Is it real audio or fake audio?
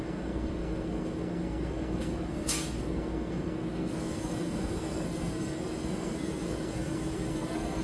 fake